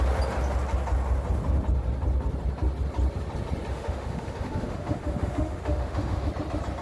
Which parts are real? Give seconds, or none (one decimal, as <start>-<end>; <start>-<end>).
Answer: 0.0-3.7; 6.3-6.8

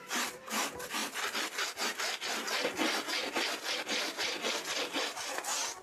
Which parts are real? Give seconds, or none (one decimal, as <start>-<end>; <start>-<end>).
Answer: 0.0-5.8

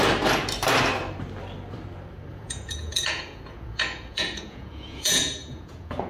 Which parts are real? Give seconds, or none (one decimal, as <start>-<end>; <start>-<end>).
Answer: 0.0-2.3

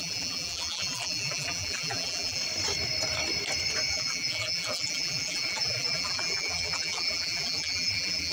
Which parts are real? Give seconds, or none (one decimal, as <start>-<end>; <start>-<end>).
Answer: 2.4-3.9

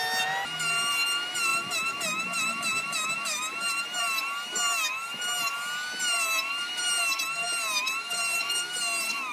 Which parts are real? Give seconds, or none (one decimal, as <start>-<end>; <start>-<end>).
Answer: 0.0-9.3

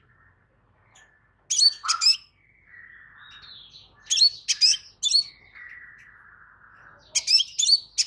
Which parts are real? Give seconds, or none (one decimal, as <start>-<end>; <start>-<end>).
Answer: 0.0-8.1